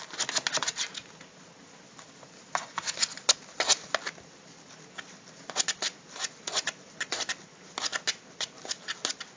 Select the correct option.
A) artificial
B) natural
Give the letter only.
B